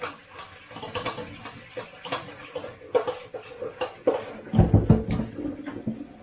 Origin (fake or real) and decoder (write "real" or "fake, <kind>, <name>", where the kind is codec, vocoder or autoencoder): real